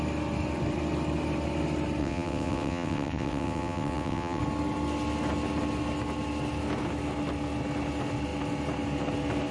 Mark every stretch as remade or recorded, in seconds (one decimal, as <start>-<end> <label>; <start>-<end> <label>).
0.0-2.0 recorded; 2.0-4.4 remade; 4.4-9.5 recorded